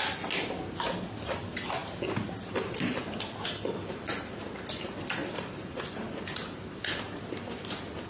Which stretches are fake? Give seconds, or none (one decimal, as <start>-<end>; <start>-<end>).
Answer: 5.2-6.1